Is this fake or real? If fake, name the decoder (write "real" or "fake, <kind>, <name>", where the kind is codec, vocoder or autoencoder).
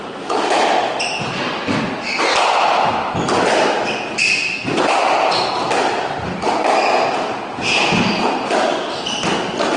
real